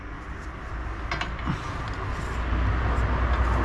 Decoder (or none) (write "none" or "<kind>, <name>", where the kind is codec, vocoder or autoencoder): none